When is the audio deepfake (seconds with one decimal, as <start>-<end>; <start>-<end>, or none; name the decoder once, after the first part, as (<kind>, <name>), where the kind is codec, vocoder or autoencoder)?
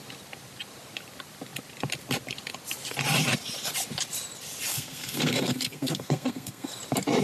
4.7-6.7 (codec, SNAC)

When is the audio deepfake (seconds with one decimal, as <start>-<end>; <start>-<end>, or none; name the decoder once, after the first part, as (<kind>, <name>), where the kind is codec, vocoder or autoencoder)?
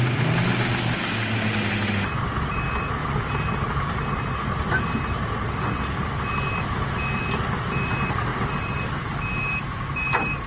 none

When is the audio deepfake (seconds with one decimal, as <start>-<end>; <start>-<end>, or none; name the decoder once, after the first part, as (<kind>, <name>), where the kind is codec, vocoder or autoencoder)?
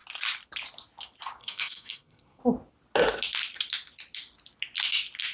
1.4-2.4 (codec, SNAC)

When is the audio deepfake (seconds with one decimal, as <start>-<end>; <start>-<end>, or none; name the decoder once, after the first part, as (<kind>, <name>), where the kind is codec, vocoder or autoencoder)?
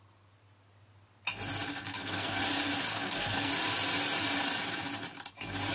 1.7-2.4 (codec, SNAC); 2.9-3.5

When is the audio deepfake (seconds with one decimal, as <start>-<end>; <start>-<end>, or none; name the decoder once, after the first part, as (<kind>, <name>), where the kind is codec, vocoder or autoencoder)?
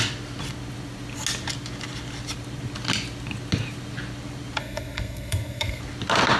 4.6-5.8 (codec, SNAC)